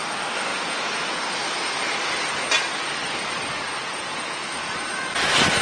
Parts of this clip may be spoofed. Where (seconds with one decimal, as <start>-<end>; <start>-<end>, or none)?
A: 0.5-1.2; 3.8-4.7